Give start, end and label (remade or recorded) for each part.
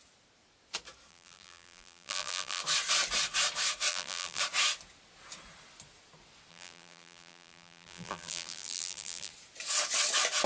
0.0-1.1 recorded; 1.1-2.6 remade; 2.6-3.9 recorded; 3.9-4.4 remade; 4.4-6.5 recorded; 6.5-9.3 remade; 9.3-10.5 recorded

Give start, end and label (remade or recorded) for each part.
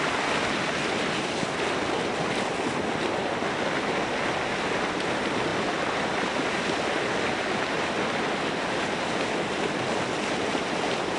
0.0-11.2 recorded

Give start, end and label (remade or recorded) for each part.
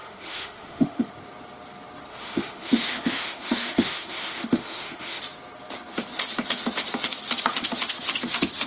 0.0-1.1 remade; 1.1-2.1 recorded; 2.1-5.2 remade; 5.2-8.7 recorded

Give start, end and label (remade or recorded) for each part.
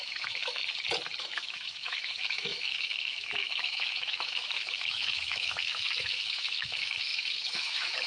0.0-0.6 remade; 0.6-1.2 recorded; 1.2-8.1 remade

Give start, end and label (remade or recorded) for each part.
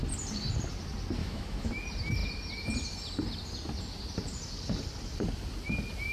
0.0-1.2 recorded; 1.2-1.7 remade; 1.7-6.1 recorded